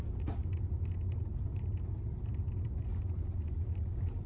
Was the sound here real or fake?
real